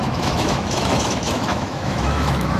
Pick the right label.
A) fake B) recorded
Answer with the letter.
A